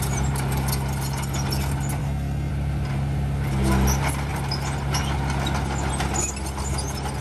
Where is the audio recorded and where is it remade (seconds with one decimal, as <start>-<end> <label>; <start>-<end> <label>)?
0.0-2.0 recorded; 2.0-2.5 remade; 2.5-7.2 recorded